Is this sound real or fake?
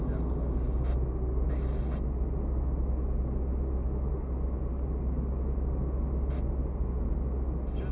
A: real